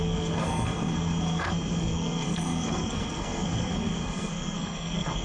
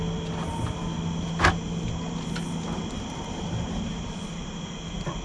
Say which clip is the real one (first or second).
second